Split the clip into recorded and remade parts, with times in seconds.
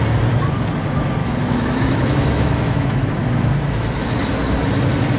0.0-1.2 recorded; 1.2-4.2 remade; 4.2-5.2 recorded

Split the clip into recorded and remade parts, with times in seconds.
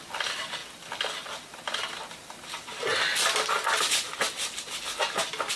0.0-5.6 recorded